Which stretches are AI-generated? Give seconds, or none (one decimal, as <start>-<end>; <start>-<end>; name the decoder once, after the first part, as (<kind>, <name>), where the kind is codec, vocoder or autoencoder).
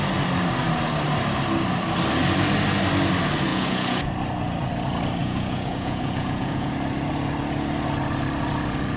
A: 3.5-4.1 (vocoder, Vocos); 5.2-6.7